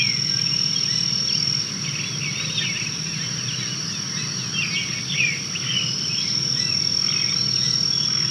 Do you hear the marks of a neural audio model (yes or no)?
no